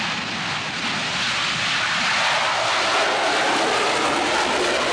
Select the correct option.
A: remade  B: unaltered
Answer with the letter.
B